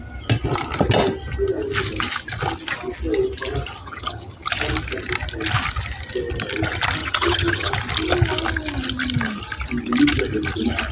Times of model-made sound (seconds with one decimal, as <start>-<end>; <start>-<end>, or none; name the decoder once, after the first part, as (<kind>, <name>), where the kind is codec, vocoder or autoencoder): 3.8-4.3 (vocoder, HiFi-GAN); 7.0-7.7